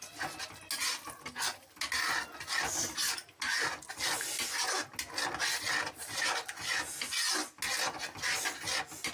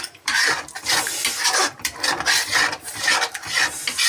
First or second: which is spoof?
second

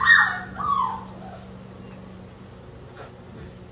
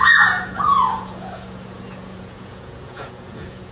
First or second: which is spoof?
second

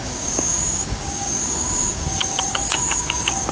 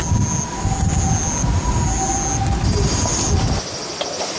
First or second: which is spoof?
first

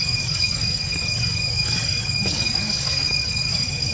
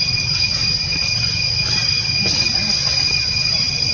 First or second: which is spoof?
first